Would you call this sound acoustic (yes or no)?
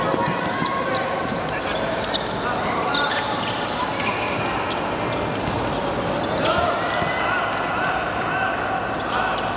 yes